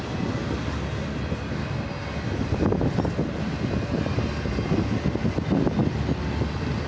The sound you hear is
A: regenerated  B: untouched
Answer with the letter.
B